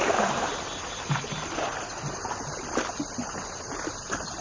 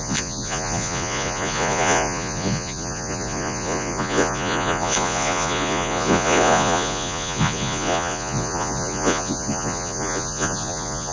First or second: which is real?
first